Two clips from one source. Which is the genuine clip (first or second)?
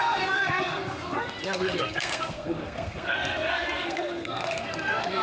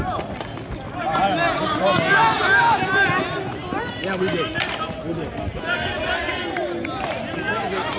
second